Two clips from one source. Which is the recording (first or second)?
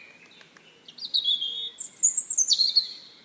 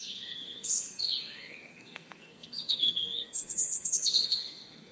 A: first